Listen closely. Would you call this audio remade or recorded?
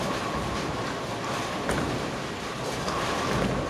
recorded